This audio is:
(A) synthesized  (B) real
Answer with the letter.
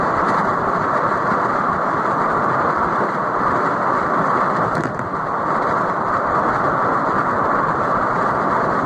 A